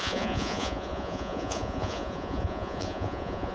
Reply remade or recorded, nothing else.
remade